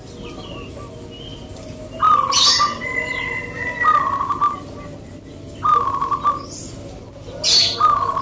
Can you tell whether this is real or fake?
real